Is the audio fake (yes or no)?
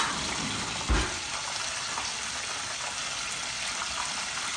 no